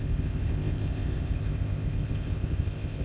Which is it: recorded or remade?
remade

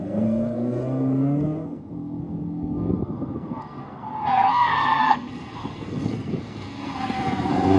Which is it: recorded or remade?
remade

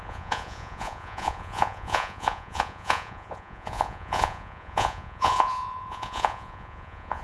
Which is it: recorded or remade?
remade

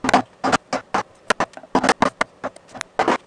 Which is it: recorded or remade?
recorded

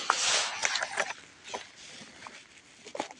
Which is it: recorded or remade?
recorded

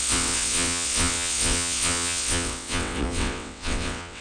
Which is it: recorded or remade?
remade